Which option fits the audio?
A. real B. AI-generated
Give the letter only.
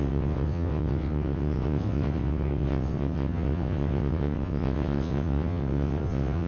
B